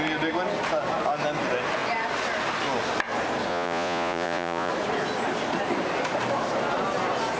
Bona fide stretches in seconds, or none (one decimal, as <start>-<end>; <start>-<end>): 0.0-3.5; 4.7-7.4